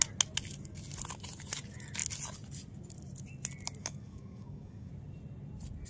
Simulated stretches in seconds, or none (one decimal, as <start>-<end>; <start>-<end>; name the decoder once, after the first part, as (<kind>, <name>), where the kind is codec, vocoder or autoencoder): 3.8-4.9 (codec, DAC)